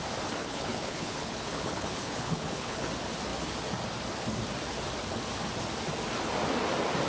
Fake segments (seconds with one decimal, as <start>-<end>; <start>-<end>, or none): 0.4-2.9